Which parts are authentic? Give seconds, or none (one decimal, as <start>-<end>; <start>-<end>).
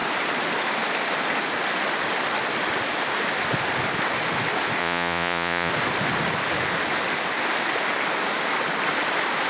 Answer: 0.0-4.8; 5.7-9.5